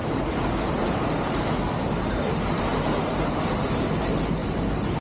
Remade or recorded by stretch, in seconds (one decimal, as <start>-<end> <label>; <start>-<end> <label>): 0.0-5.0 recorded